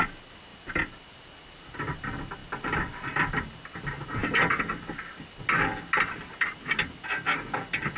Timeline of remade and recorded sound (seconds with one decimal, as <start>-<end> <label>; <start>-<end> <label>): 0.0-8.0 recorded